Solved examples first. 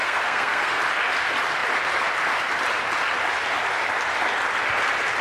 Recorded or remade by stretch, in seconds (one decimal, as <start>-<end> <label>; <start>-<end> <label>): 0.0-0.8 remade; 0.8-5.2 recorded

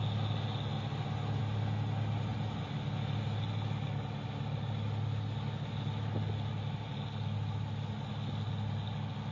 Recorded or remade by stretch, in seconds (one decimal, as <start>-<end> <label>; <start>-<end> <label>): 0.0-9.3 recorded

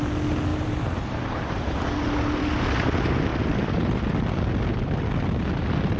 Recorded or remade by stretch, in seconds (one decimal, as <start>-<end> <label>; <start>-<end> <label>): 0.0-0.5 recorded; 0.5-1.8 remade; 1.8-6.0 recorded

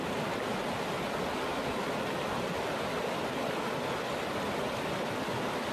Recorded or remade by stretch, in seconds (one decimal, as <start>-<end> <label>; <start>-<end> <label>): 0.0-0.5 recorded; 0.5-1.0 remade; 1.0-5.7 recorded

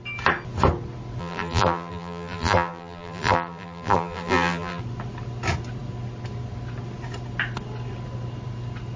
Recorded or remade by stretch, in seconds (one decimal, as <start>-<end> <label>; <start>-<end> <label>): 0.0-1.2 recorded; 1.2-4.8 remade; 4.8-9.0 recorded

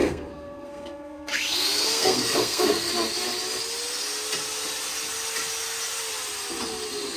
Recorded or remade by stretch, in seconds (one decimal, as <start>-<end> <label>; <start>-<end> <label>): 0.0-2.9 remade; 2.9-7.2 recorded